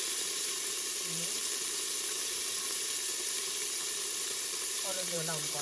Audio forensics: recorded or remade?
remade